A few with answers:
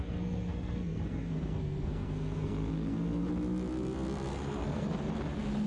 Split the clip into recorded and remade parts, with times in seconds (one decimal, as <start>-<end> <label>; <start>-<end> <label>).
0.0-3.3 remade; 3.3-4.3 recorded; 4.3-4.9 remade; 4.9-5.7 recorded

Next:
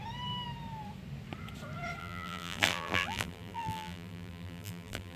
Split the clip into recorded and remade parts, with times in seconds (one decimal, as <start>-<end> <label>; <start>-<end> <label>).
0.0-2.0 recorded; 2.0-5.2 remade

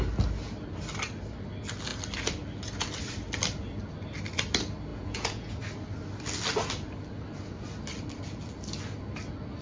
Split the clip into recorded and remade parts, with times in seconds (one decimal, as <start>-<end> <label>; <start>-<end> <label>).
0.0-4.9 recorded; 4.9-5.5 remade; 5.5-9.6 recorded

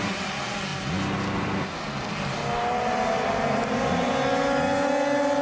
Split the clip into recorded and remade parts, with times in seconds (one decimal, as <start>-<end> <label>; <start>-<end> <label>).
0.0-5.4 recorded

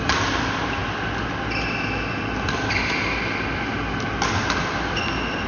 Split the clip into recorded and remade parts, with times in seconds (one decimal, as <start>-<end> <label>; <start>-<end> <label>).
0.0-5.5 recorded

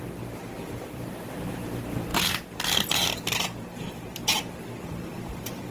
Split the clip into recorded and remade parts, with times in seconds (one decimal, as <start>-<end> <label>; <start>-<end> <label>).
0.0-5.7 remade